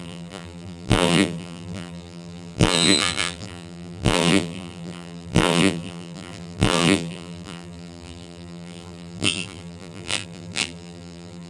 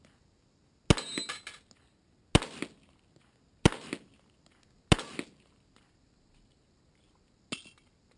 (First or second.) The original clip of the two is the second